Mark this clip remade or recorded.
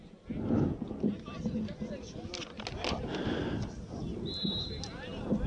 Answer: recorded